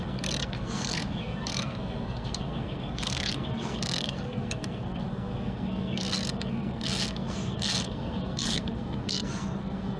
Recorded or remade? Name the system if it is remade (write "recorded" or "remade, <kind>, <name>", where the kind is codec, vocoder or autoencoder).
remade, codec, SNAC